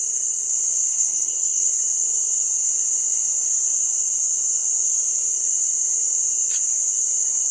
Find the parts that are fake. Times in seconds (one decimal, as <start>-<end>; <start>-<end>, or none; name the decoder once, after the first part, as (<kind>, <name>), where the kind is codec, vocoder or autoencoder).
0.9-1.7 (codec, SNAC)